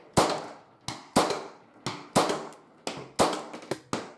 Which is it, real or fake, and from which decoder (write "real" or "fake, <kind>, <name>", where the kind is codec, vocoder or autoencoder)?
real